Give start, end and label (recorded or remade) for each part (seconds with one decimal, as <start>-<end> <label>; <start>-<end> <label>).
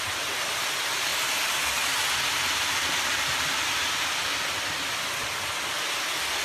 0.0-6.4 recorded